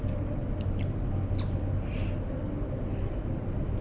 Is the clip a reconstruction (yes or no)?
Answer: no